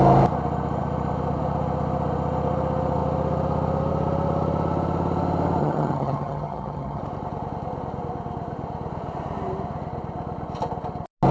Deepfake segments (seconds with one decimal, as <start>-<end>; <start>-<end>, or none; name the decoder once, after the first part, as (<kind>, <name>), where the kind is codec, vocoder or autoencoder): 5.6-7.0 (vocoder, HiFi-GAN)